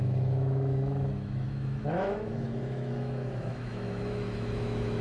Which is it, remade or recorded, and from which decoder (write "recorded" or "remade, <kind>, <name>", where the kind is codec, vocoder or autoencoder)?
remade, autoencoder, DAC-VAE